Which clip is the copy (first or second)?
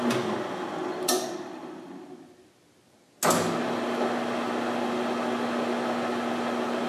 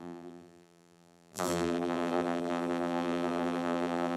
second